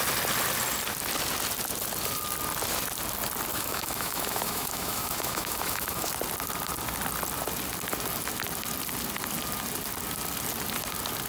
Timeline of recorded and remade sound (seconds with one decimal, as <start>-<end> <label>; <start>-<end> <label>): 0.0-3.5 recorded; 3.5-6.1 remade; 6.1-11.3 recorded